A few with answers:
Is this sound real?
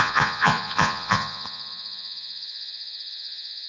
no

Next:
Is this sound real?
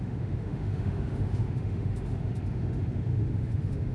no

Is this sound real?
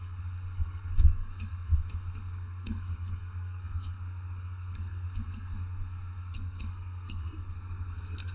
no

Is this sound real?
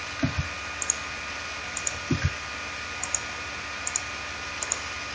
yes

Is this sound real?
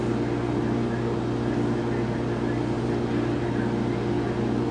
yes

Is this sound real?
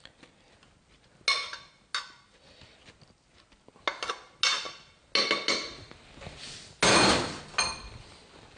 yes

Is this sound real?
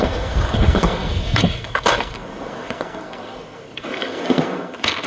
no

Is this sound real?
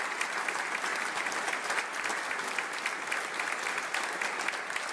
yes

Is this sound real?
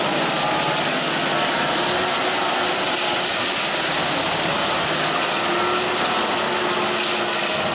yes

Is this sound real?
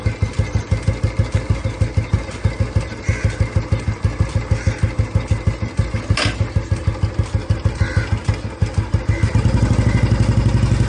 yes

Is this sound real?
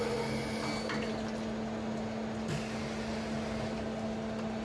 yes